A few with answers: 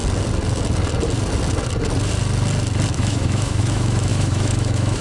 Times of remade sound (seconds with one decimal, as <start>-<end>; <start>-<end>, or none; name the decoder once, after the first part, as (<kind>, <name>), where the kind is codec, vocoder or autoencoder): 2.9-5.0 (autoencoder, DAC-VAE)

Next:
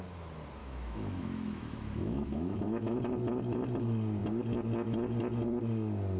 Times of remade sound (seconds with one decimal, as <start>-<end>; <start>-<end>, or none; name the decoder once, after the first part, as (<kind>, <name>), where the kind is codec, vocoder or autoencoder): 0.6-3.0 (autoencoder, DAC-VAE)

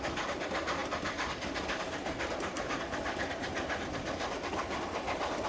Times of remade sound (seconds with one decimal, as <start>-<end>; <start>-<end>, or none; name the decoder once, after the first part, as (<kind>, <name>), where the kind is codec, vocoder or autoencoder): none

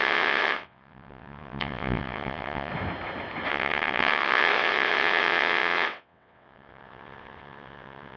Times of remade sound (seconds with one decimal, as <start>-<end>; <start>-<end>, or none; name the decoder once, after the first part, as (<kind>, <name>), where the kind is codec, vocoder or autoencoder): 0.0-2.7 (vocoder, WaveNeXt); 3.5-8.2

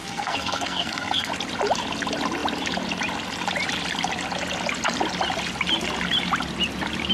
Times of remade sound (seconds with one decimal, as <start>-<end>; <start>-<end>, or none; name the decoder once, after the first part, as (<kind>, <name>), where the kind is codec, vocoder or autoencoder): 0.0-1.3 (codec, SNAC)

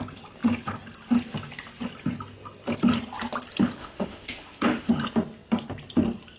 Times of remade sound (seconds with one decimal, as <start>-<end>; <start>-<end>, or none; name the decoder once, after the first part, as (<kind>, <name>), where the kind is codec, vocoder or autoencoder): 3.8-4.9 (autoencoder, DAC-VAE)

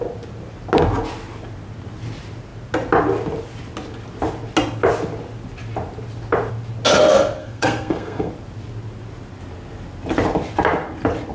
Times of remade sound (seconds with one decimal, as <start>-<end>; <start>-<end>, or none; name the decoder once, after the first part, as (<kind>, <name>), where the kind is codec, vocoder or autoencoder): 7.4-8.3 (codec, SNAC)

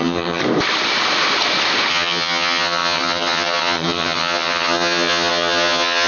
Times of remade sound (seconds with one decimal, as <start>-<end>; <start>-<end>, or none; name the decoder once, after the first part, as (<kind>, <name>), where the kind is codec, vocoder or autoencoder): 0.0-0.4 (vocoder, HiFi-GAN); 1.9-6.1